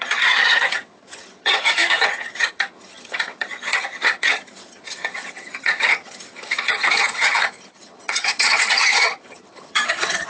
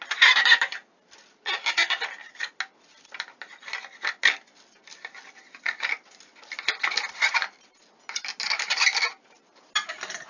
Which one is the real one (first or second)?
second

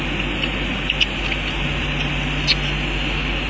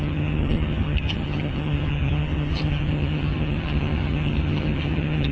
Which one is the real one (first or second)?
first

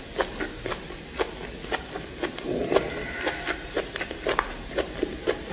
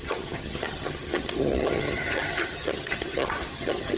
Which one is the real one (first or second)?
first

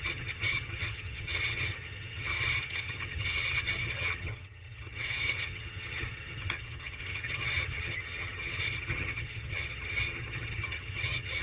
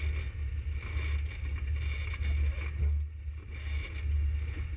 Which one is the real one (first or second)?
second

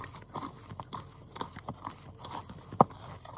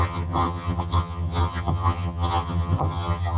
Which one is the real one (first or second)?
first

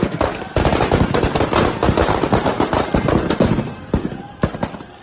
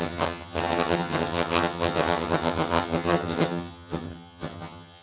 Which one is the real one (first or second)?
first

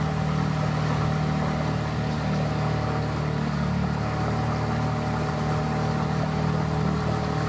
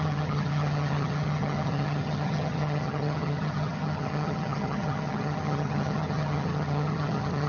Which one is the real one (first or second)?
first